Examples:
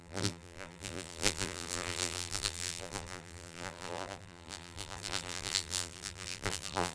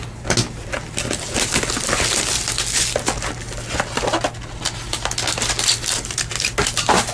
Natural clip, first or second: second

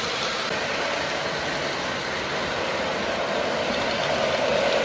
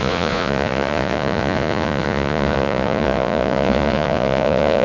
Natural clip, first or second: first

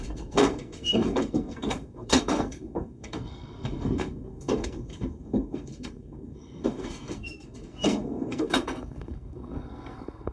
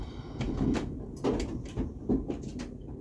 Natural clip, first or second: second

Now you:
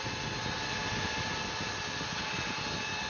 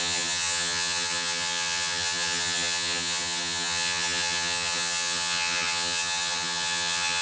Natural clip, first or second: first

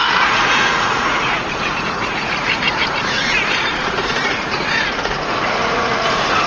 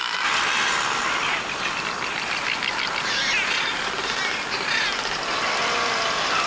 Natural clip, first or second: second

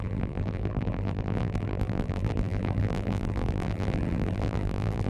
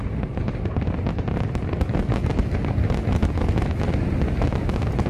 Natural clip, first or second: second